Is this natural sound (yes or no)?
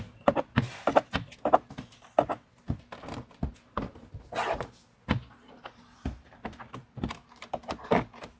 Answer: yes